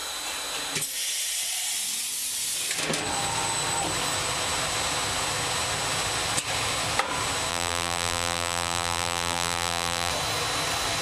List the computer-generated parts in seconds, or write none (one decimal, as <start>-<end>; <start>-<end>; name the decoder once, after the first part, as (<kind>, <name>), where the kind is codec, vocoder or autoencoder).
7.5-10.1 (vocoder, BigVGAN v2)